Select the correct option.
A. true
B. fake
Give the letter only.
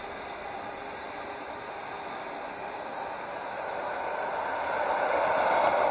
A